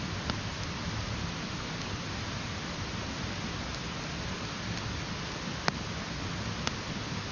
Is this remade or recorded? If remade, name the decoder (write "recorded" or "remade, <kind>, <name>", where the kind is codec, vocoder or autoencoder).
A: recorded